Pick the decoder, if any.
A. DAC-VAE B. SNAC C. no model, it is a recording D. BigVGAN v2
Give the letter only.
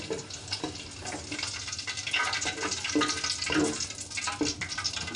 C